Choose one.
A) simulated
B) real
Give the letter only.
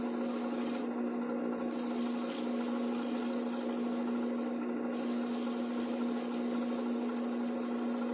B